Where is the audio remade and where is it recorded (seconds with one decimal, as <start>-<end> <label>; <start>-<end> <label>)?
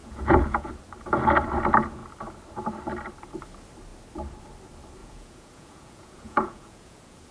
0.0-0.7 remade; 0.7-5.0 recorded; 5.0-7.3 remade